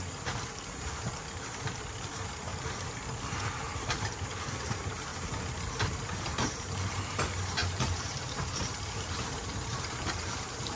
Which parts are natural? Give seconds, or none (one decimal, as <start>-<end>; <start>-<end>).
2.5-3.5; 5.1-6.1